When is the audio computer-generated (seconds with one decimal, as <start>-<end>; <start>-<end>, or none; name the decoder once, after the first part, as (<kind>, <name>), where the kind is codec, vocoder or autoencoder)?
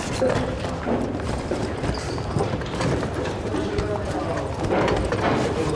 1.6-4.2 (vocoder, BigVGAN v2)